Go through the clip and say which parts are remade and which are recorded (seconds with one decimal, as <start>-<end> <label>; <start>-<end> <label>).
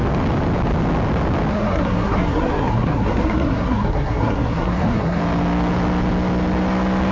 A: 0.0-1.5 recorded; 1.5-5.2 remade; 5.2-7.1 recorded